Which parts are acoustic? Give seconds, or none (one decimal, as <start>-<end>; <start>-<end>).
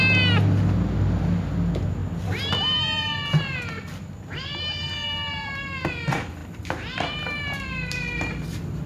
0.0-6.4